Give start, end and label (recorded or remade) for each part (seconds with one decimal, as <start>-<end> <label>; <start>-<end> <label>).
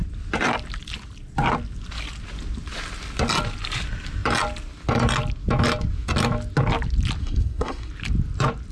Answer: 0.0-7.2 recorded; 7.2-7.9 remade; 7.9-8.7 recorded